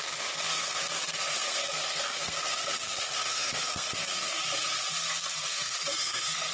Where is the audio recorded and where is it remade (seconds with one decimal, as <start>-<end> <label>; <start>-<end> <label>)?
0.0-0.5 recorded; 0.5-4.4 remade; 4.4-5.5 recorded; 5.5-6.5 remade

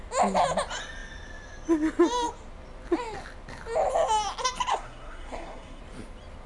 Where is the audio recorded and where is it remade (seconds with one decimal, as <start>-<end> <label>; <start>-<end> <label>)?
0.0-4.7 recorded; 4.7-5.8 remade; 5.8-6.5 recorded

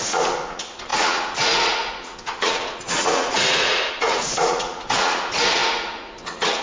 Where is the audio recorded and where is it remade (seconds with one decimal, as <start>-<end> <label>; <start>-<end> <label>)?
0.0-6.6 remade